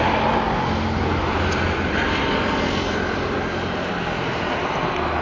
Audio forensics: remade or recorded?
recorded